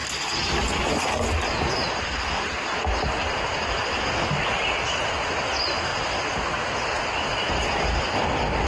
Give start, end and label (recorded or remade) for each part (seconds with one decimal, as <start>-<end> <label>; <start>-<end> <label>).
0.0-8.7 recorded